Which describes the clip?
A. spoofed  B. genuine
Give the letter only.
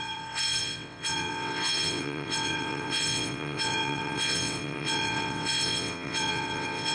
A